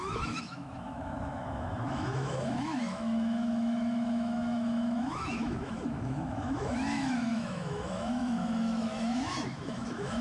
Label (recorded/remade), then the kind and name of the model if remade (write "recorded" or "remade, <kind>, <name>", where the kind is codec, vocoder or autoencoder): remade, autoencoder, DAC-VAE